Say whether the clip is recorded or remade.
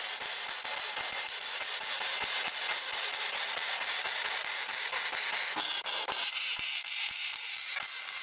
recorded